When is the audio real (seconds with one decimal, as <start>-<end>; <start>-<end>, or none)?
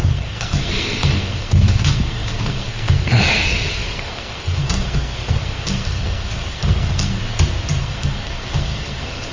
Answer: 7.2-7.8